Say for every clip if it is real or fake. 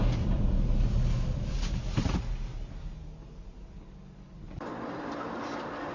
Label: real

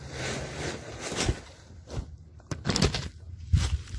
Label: real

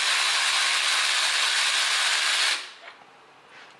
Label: real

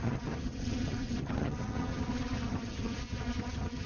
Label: fake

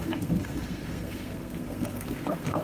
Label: fake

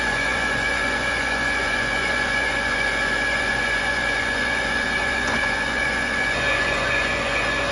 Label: fake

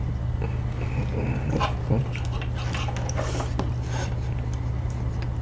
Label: real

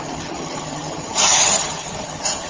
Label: fake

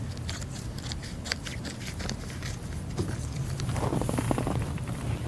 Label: fake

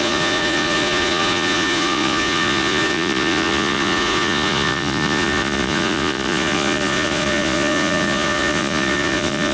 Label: fake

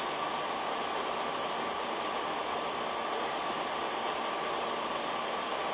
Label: real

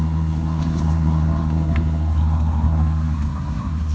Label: fake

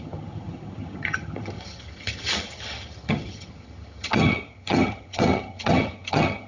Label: fake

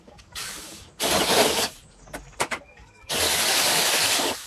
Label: fake